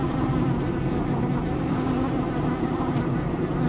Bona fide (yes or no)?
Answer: yes